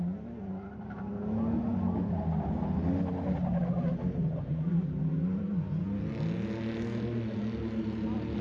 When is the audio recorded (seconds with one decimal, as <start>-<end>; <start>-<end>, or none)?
0.0-8.4